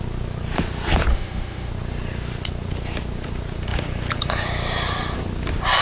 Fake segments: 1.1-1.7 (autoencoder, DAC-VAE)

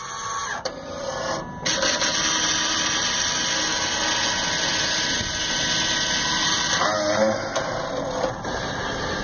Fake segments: 0.4-1.1 (vocoder, BigVGAN v2)